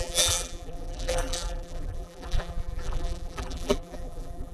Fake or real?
fake